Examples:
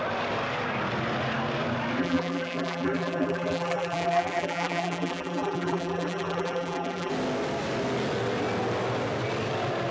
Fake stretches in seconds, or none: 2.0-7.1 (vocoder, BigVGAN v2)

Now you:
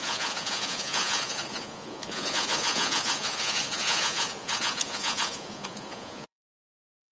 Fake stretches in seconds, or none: 0.0-7.1 (vocoder, Vocos)